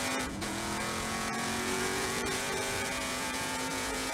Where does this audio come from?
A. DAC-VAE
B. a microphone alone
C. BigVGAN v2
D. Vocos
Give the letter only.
D